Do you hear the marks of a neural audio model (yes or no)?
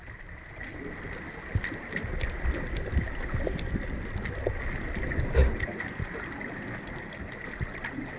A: no